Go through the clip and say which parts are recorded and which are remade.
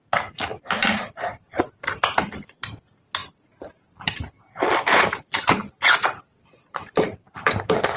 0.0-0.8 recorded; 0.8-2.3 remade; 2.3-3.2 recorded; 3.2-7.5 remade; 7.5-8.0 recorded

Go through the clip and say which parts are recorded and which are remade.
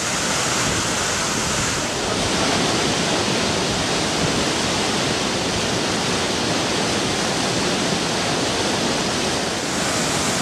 0.0-1.4 recorded; 1.4-4.3 remade; 4.3-10.4 recorded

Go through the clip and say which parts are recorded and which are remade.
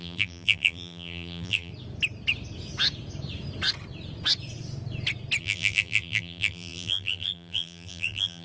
0.0-1.7 remade; 1.7-5.4 recorded; 5.4-8.4 remade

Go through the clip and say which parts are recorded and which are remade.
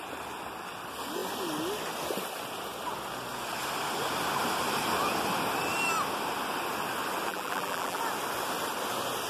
0.0-7.3 recorded; 7.3-8.0 remade; 8.0-9.3 recorded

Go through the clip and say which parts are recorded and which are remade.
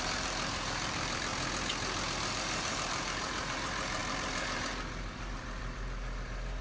0.0-1.3 remade; 1.3-2.2 recorded; 2.2-6.6 remade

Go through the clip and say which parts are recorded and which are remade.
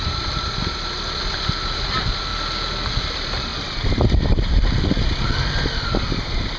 0.0-2.3 remade; 2.3-3.0 recorded; 3.0-3.5 remade; 3.5-6.6 recorded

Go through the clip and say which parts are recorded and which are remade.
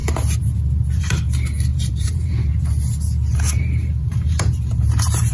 0.0-1.7 recorded; 1.7-2.3 remade; 2.3-3.3 recorded; 3.3-5.3 remade